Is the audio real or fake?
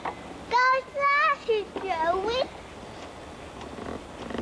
real